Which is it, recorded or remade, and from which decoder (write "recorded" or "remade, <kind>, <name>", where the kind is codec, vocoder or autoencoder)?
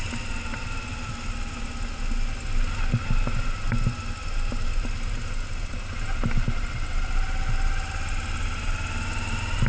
recorded